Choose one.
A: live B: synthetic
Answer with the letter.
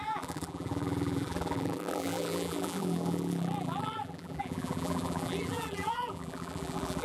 B